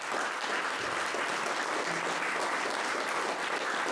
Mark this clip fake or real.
real